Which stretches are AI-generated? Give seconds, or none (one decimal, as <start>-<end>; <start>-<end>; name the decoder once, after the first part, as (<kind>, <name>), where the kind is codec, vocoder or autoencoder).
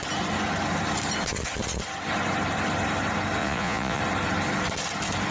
3.4-4.0 (vocoder, Vocos)